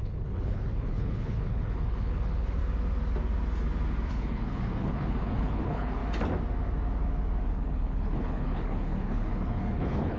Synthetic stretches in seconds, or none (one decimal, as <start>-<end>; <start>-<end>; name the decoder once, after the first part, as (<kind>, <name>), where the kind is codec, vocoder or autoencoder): 0.0-2.6 (codec, HILCodec); 4.1-6.0; 7.5-10.2